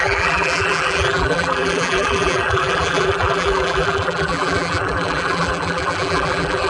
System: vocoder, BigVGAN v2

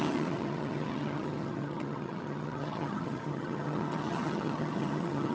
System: vocoder, HiFi-GAN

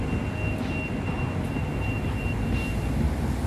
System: none